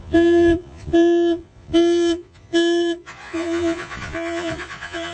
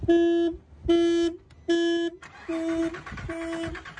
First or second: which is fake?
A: first